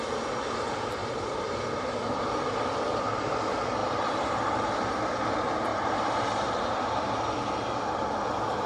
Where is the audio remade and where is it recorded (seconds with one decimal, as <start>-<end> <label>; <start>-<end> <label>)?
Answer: 0.0-1.0 recorded; 1.0-2.2 remade; 2.2-3.8 recorded; 3.8-5.3 remade; 5.3-5.7 recorded; 5.7-7.1 remade; 7.1-8.7 recorded